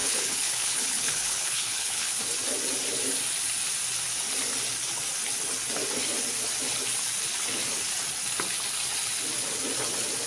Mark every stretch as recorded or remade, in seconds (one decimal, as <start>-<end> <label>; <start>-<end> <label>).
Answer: 0.0-2.2 remade; 2.2-10.3 recorded